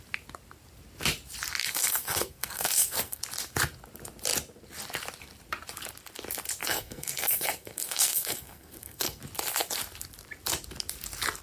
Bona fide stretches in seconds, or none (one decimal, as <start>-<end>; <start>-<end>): 0.0-1.6; 3.2-6.6; 9.2-11.4